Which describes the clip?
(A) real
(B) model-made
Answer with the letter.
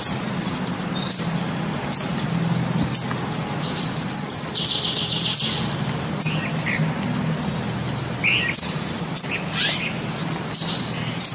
A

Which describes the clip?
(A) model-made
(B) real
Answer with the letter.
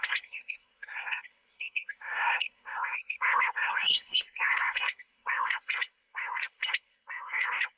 A